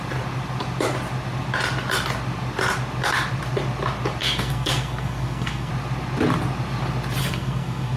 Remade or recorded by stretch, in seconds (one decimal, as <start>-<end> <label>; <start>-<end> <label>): 0.0-4.2 recorded; 4.2-5.7 remade; 5.7-7.2 recorded; 7.2-8.0 remade

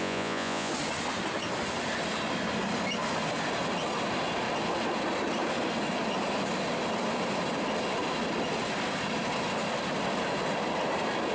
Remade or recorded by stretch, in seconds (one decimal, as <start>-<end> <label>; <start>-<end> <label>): 0.0-0.7 remade; 0.7-11.3 recorded

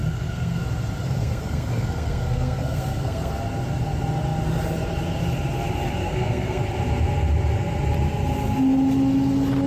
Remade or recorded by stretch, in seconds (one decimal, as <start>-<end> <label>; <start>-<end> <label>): 0.0-0.6 remade; 0.6-1.0 recorded; 1.0-3.3 remade; 3.3-6.0 recorded; 6.0-6.6 remade; 6.6-9.7 recorded

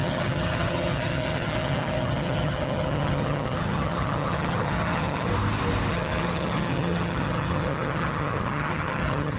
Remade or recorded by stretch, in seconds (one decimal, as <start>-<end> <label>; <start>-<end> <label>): 0.0-5.3 remade; 5.3-5.9 recorded; 5.9-9.4 remade

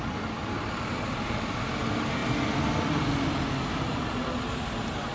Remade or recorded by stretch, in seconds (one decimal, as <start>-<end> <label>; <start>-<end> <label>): 0.0-0.4 recorded; 0.4-1.6 remade; 1.6-5.1 recorded

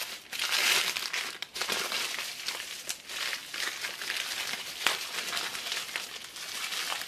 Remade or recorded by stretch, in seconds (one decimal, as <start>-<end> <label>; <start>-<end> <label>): 0.0-3.4 remade; 3.4-4.5 recorded; 4.5-5.5 remade; 5.5-7.1 recorded

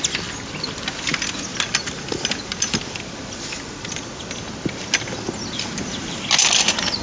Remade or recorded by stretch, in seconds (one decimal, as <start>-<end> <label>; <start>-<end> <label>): 0.0-7.0 recorded